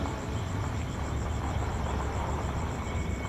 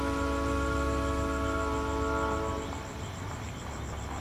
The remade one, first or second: first